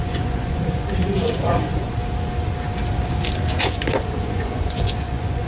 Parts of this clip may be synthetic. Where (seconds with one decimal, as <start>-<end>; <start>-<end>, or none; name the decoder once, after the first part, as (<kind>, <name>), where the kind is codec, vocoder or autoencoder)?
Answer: 0.0-2.0 (vocoder, Vocos); 3.6-5.5